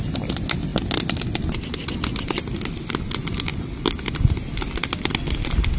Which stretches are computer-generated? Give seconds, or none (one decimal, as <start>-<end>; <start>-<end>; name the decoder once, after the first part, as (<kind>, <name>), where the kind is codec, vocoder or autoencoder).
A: none